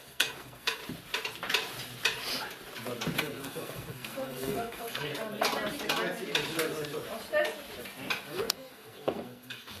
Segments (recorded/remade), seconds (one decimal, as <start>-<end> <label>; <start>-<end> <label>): 0.0-0.8 remade; 0.8-3.2 recorded; 3.2-5.1 remade; 5.1-8.3 recorded; 8.3-9.8 remade